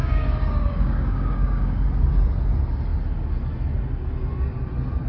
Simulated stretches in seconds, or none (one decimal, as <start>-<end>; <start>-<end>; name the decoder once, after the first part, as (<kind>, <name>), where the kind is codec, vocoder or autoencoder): 0.0-1.8 (codec, DAC)